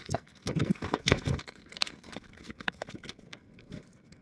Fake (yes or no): yes